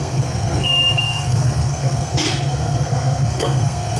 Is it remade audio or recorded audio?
remade